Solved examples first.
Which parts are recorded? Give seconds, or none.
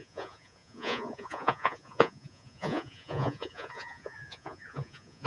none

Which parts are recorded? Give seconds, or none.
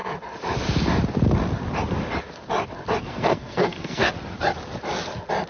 0.0-3.0; 4.1-5.5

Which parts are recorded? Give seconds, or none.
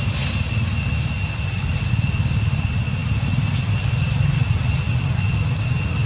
0.0-6.1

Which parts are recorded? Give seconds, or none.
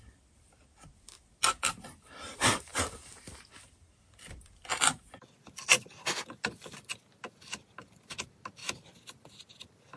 0.0-10.0